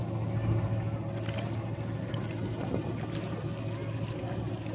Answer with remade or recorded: recorded